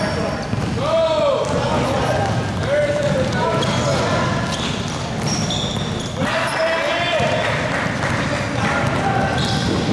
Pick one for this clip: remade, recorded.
recorded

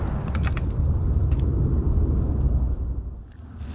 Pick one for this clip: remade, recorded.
recorded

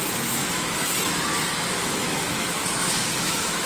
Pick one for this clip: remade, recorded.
remade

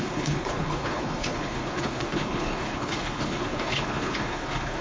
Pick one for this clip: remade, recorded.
remade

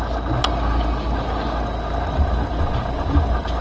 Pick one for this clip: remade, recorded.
recorded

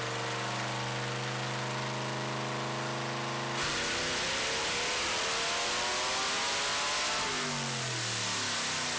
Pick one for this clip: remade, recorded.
recorded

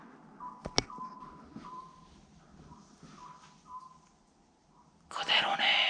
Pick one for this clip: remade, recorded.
recorded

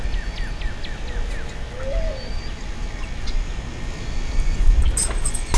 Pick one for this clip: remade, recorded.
recorded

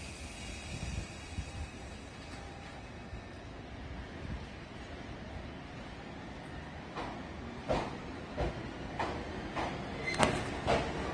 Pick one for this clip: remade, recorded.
recorded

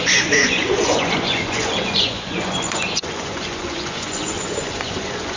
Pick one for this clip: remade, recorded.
remade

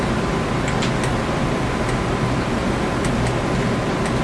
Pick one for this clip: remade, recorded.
recorded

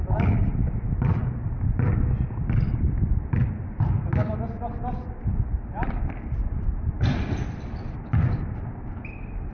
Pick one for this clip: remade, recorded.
recorded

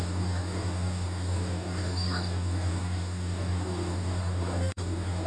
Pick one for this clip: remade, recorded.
remade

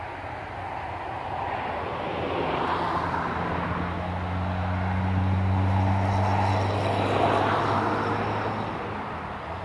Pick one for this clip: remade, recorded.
recorded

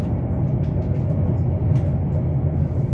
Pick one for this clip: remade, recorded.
recorded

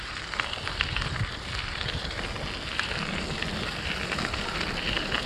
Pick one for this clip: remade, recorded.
recorded